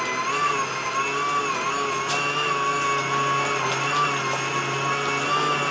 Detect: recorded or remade recorded